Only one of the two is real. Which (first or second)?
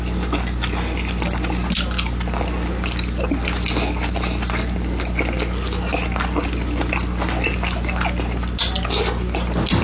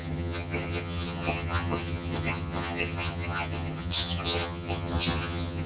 first